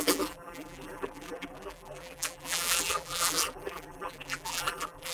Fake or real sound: fake